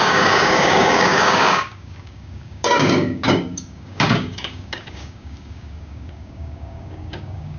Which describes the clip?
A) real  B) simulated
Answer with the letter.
B